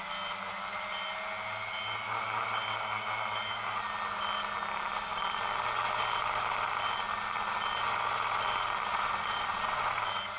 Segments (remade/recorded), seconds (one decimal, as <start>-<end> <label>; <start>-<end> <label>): 0.0-8.9 recorded; 8.9-10.0 remade; 10.0-10.4 recorded